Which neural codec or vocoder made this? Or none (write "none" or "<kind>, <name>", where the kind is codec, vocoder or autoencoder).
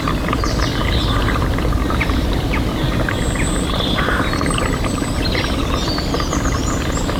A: none